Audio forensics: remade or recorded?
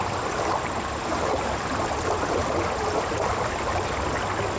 recorded